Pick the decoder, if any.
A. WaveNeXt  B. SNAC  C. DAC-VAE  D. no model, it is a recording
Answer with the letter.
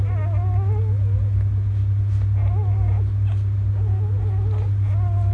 D